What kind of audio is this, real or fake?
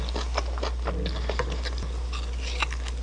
real